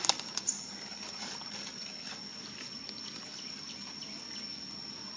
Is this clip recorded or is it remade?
recorded